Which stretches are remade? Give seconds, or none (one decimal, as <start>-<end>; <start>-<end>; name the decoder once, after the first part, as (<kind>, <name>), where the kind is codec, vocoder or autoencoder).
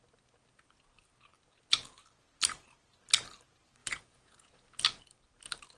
3.8-4.8 (vocoder, Vocos)